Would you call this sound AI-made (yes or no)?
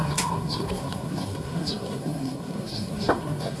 yes